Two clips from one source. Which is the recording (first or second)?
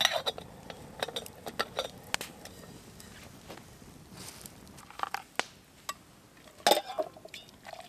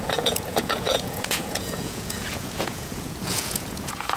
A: first